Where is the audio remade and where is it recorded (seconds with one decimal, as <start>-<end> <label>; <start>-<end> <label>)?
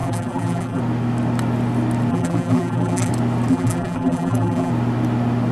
0.0-0.8 remade; 0.8-2.1 recorded; 2.1-3.1 remade; 3.1-3.5 recorded; 3.5-4.7 remade; 4.7-5.5 recorded